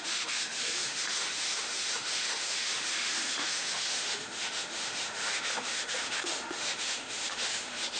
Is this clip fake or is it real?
fake